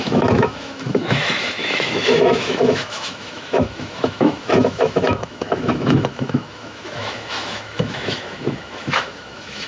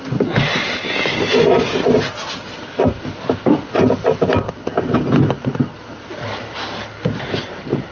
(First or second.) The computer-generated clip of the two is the first